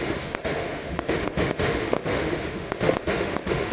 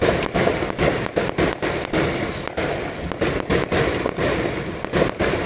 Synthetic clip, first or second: first